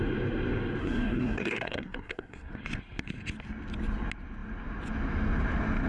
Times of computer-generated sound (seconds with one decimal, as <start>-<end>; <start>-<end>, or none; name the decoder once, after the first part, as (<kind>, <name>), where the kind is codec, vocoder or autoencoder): 0.8-2.5 (codec, SNAC)